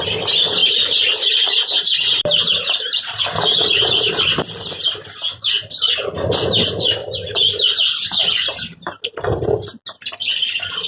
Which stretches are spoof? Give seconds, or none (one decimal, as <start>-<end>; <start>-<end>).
0.6-5.1; 7.0-9.0